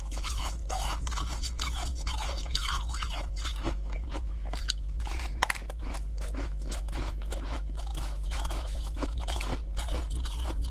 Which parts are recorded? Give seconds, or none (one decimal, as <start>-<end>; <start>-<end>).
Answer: 9.5-10.7